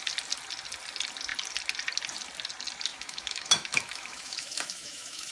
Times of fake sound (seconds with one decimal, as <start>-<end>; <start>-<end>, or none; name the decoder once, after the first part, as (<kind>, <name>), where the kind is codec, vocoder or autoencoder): 2.9-5.3 (autoencoder, DAC-VAE)